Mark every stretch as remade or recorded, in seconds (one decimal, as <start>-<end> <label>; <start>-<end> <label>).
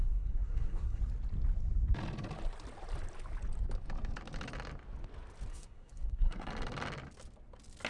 0.0-1.0 remade; 1.0-5.5 recorded; 5.5-6.5 remade; 6.5-7.9 recorded